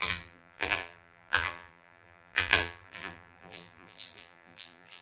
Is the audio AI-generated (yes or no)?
yes